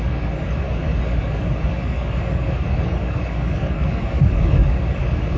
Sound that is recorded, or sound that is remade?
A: remade